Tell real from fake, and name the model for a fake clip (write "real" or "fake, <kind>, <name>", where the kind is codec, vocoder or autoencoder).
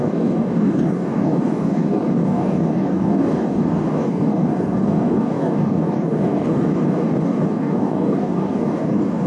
fake, codec, DAC